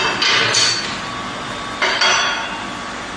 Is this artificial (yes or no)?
no